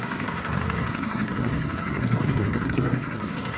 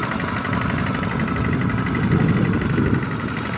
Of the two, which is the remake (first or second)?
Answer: first